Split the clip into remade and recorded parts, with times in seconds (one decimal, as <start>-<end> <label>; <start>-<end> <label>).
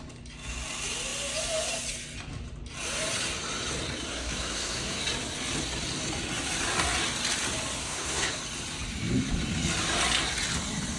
0.0-4.1 recorded; 4.1-5.0 remade; 5.0-7.8 recorded; 7.8-8.4 remade; 8.4-11.0 recorded